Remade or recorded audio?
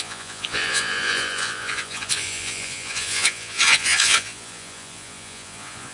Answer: remade